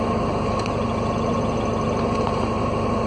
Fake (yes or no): no